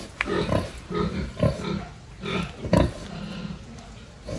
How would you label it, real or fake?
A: real